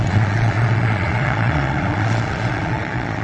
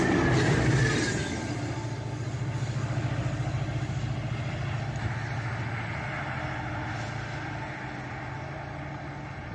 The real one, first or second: second